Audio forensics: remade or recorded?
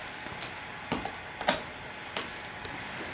recorded